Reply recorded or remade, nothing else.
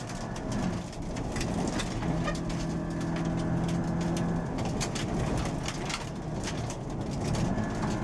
recorded